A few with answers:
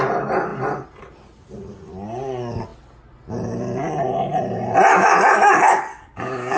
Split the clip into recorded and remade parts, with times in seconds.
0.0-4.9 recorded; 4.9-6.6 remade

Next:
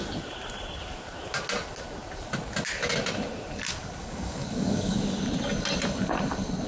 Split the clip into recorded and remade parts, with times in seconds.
0.0-4.0 recorded; 4.0-5.2 remade; 5.2-6.7 recorded

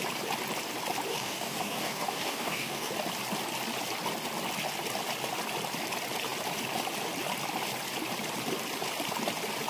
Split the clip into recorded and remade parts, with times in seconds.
0.0-1.1 recorded; 1.1-2.9 remade; 2.9-9.7 recorded

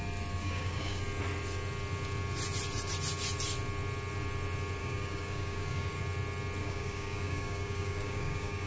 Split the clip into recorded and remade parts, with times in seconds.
0.0-0.4 recorded; 0.4-1.0 remade; 1.0-4.8 recorded; 4.8-6.0 remade; 6.0-6.6 recorded; 6.6-8.7 remade

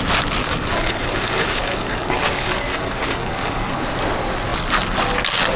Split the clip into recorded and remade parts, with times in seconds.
0.0-0.4 recorded; 0.4-3.8 remade; 3.8-5.6 recorded

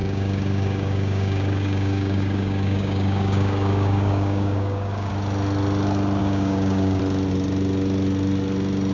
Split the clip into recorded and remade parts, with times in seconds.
0.0-5.1 remade; 5.1-6.2 recorded; 6.2-7.0 remade; 7.0-8.9 recorded

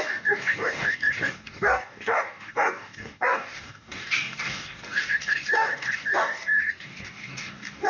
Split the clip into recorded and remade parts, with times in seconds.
0.0-7.9 remade

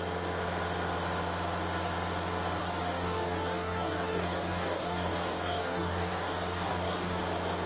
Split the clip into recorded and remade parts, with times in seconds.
0.0-2.6 recorded; 2.6-7.2 remade; 7.2-7.7 recorded